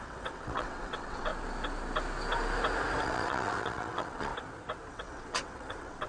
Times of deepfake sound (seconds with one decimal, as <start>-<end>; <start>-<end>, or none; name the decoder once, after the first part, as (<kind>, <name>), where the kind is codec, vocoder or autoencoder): 0.0-1.3 (vocoder, WaveNeXt); 3.0-4.3; 4.9-6.1